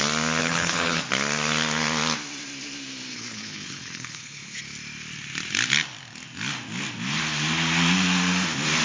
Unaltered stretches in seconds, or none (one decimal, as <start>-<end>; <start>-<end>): 0.0-0.4; 1.0-3.1; 4.6-8.8